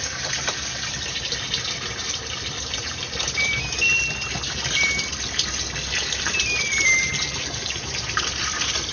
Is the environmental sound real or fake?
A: fake